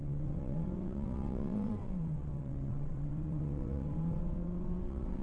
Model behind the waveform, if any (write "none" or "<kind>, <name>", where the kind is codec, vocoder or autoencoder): vocoder, WaveNeXt